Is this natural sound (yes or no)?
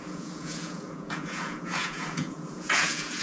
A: no